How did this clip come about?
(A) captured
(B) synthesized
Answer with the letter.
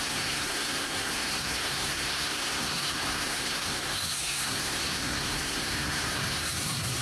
B